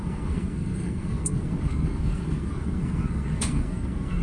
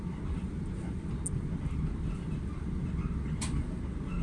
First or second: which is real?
second